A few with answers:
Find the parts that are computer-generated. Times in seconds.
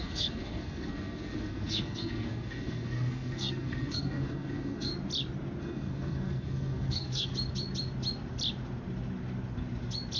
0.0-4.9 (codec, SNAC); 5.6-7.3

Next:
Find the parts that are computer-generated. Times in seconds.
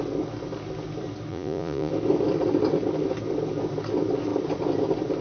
1.3-1.9 (vocoder, Vocos)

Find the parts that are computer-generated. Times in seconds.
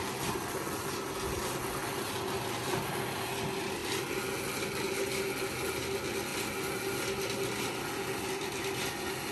none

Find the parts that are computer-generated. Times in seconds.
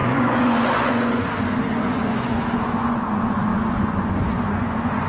0.0-5.1 (vocoder, Vocos)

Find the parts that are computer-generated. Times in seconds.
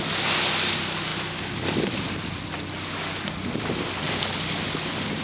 none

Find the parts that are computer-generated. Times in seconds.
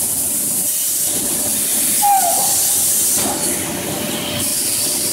0.0-1.7 (vocoder, BigVGAN v2); 3.5-5.1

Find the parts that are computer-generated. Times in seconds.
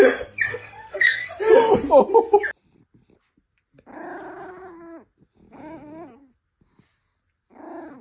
0.5-1.3 (codec, SNAC)